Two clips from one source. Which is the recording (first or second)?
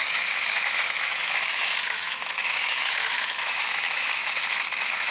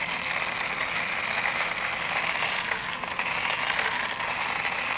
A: second